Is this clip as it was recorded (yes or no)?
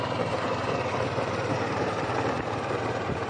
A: no